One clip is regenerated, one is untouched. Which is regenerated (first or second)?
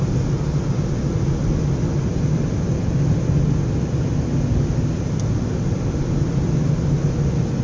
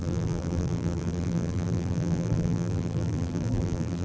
second